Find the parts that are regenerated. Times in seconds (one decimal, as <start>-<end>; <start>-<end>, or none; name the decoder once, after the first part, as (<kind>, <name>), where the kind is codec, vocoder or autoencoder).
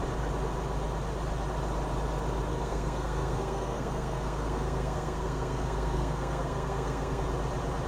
2.5-7.2 (codec, SNAC)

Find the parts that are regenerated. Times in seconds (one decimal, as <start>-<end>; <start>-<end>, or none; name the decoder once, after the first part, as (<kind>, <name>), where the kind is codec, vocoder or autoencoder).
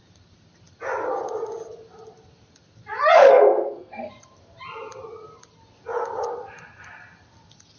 3.3-4.1 (codec, SNAC)